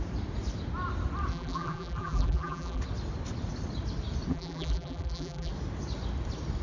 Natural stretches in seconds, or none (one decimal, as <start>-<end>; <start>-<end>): 0.0-1.3; 2.8-4.3; 5.5-6.6